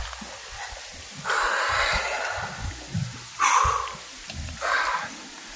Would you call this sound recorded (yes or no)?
yes